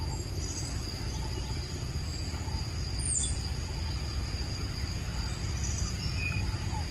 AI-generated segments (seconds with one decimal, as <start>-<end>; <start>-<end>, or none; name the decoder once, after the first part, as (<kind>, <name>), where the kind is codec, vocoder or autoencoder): none